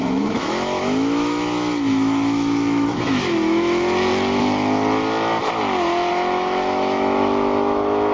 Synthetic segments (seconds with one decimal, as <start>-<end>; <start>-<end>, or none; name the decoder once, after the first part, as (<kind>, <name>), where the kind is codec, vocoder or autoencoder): 0.0-4.1 (autoencoder, DAC-VAE); 6.1-8.1